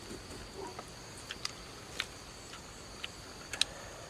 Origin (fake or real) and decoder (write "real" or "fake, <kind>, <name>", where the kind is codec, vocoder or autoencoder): real